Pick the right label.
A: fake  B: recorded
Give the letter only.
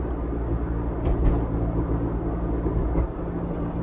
B